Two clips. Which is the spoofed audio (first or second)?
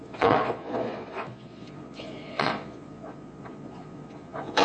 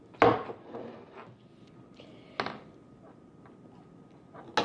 first